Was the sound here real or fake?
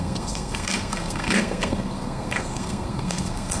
fake